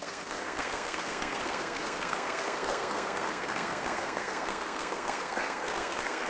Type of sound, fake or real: fake